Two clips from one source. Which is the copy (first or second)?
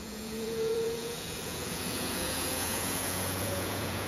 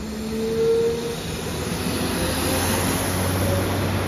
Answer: first